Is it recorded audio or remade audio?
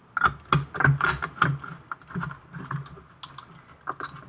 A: recorded